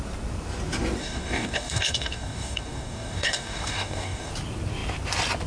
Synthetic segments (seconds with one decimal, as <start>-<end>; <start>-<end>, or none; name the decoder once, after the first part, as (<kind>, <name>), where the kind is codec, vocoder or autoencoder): 1.0-4.3 (codec, DAC)